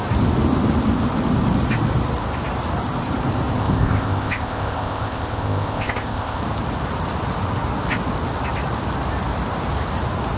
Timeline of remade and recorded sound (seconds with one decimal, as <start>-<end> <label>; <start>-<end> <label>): 0.0-3.6 recorded; 3.6-6.4 remade; 6.4-10.4 recorded